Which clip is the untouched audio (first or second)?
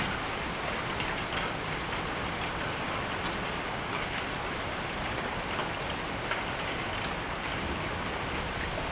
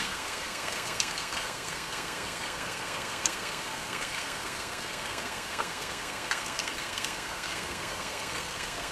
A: first